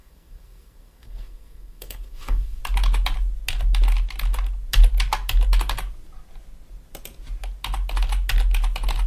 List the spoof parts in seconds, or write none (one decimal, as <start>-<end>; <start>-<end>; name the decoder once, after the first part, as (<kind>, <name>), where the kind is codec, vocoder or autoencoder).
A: 0.0-2.6 (codec, SNAC)